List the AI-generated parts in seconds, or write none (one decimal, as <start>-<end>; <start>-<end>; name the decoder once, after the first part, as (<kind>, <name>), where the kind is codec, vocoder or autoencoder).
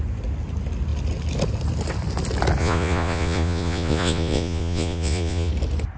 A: 2.6-5.5 (vocoder, Vocos)